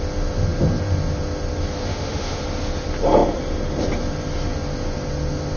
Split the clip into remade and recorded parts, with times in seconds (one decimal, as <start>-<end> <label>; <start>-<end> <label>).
0.0-1.9 recorded; 1.9-2.4 remade; 2.4-5.6 recorded